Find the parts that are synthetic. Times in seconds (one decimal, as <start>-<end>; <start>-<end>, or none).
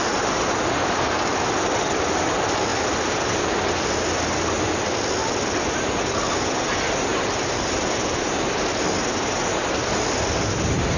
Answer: none